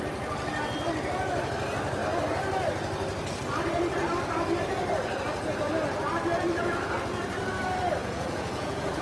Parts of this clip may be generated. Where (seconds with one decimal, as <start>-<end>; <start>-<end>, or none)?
8.0-9.0